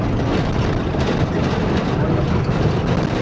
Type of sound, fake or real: real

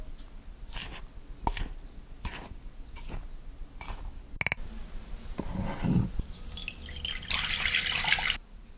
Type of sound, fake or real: real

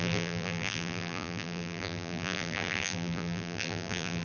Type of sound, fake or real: fake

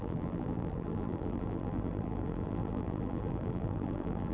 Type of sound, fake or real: fake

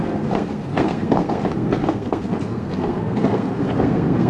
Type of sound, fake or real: fake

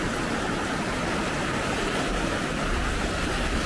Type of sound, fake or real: real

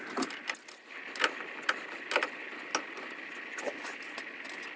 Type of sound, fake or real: real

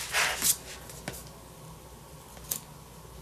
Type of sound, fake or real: real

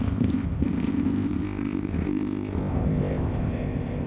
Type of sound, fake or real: fake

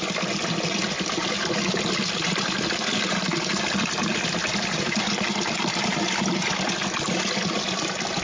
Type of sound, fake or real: real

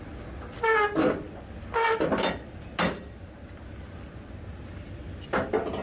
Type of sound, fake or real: real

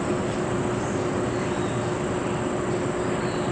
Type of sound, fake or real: real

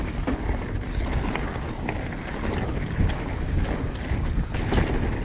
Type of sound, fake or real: real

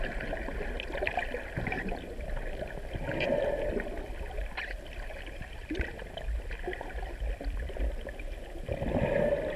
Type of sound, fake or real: real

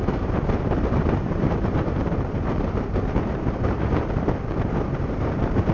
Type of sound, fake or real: fake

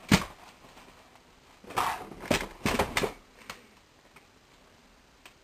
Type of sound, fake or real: real